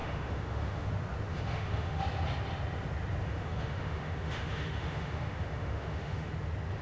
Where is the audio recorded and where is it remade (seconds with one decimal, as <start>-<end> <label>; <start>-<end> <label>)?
0.0-0.9 remade; 0.9-1.3 recorded; 1.3-2.0 remade; 2.0-3.2 recorded; 3.2-6.3 remade; 6.3-6.8 recorded